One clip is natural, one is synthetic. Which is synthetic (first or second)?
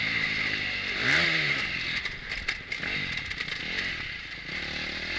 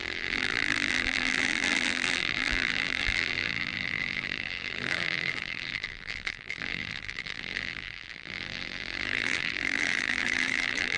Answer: second